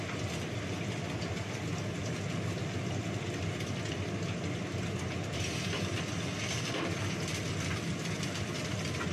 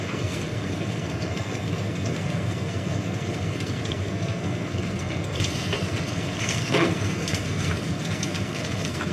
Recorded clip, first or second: first